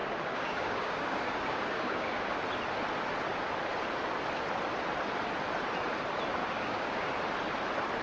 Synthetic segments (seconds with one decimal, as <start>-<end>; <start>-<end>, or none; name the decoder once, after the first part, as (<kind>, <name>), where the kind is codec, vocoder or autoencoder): 0.0-2.4 (codec, DAC); 6.4-7.1